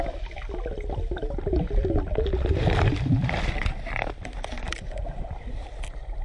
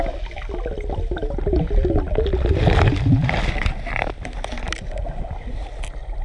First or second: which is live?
second